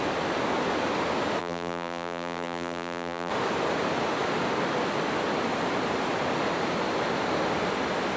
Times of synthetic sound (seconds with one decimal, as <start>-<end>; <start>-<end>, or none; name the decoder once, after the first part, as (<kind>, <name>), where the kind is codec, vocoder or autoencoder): 1.4-3.3 (vocoder, BigVGAN v2)